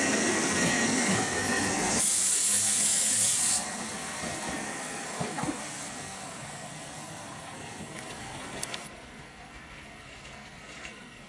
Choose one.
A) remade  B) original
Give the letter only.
A